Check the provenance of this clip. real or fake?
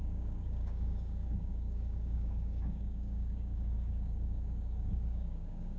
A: fake